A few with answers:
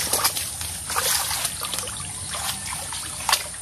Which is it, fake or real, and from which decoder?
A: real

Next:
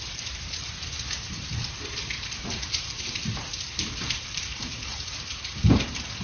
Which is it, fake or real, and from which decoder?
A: fake, vocoder, BigVGAN v2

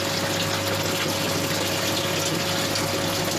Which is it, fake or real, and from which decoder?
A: real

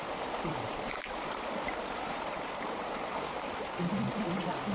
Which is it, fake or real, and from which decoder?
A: fake, vocoder, BigVGAN v2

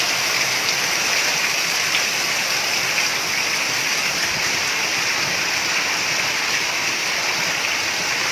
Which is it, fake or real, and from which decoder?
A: real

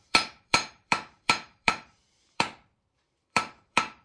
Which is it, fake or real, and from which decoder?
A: fake, vocoder, BigVGAN v2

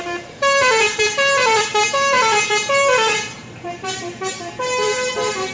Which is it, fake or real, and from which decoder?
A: fake, vocoder, BigVGAN v2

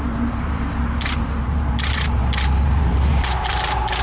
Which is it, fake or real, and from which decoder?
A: fake, vocoder, BigVGAN v2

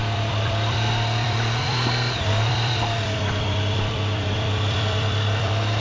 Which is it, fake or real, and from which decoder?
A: fake, vocoder, BigVGAN v2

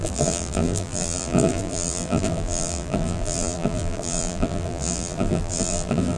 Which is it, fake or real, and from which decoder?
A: fake, vocoder, BigVGAN v2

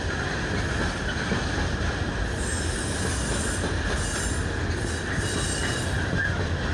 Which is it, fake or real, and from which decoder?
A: real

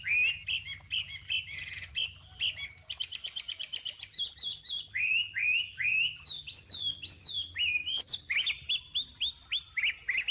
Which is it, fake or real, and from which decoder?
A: real